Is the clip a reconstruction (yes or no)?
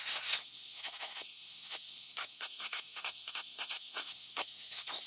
yes